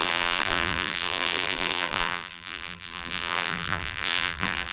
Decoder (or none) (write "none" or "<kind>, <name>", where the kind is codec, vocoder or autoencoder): vocoder, BigVGAN v2